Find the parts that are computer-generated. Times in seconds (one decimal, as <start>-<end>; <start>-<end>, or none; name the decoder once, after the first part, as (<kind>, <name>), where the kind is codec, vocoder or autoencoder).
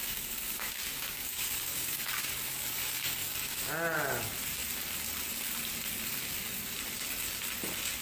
0.0-3.7 (codec, DAC)